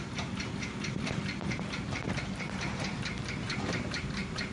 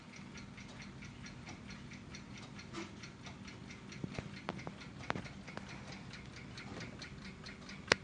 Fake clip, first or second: first